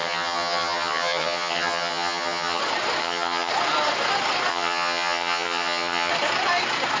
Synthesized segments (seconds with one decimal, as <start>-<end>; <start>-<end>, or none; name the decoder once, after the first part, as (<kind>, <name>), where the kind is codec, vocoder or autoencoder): 0.0-2.6 (vocoder, HiFi-GAN); 3.0-3.5; 4.5-6.1